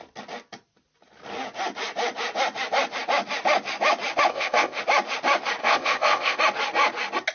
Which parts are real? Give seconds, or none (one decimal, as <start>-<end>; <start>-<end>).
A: 0.0-4.3; 4.8-5.6; 6.4-7.3